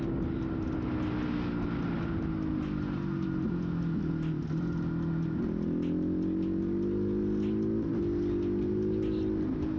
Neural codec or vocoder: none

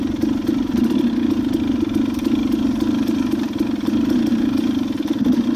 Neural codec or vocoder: none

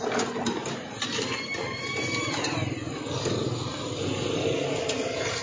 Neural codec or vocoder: none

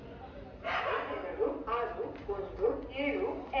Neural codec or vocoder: none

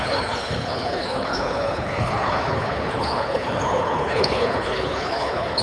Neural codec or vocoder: codec, HILCodec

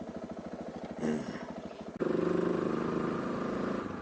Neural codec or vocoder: none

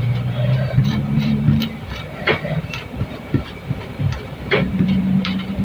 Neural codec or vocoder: vocoder, BigVGAN v2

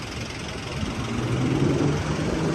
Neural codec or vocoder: none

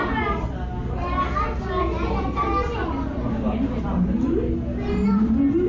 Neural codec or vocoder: none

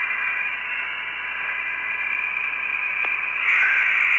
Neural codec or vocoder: none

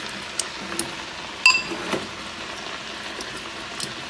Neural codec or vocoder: none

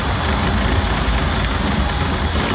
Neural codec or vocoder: none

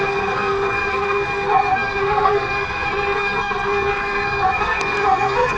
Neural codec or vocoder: codec, SNAC